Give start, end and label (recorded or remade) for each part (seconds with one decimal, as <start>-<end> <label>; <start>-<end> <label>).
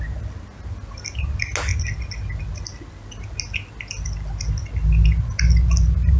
0.0-6.2 recorded